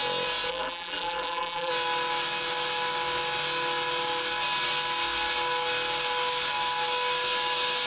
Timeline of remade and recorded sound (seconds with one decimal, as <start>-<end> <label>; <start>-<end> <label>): 0.0-0.5 recorded; 0.5-1.7 remade; 1.7-7.9 recorded